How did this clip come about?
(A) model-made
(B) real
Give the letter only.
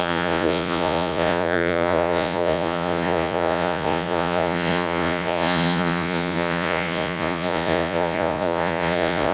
A